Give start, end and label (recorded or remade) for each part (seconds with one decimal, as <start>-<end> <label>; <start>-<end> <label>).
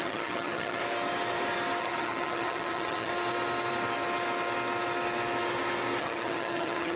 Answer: 0.0-0.8 remade; 0.8-1.8 recorded; 1.8-3.1 remade; 3.1-6.0 recorded; 6.0-7.0 remade